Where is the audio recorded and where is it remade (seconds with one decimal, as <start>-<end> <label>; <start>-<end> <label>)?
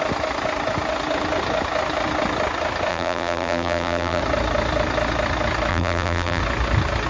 0.0-2.9 recorded; 2.9-4.2 remade; 4.2-5.7 recorded; 5.7-6.4 remade; 6.4-7.1 recorded